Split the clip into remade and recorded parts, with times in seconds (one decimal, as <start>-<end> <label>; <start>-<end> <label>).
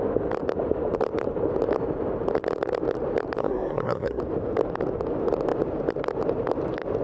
0.0-3.4 recorded; 3.4-4.2 remade; 4.2-7.0 recorded